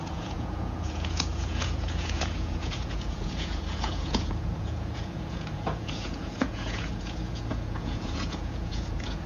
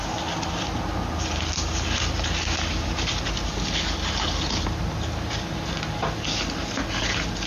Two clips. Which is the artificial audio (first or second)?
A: first